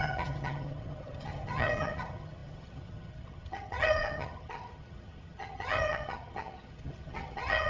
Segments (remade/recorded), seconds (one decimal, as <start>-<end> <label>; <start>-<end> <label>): 0.0-7.7 remade